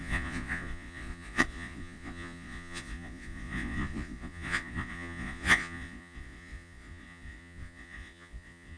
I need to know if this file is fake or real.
fake